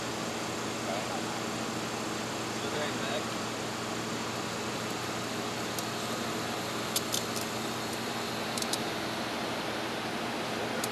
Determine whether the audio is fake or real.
real